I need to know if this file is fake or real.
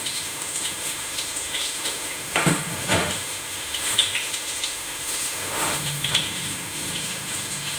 fake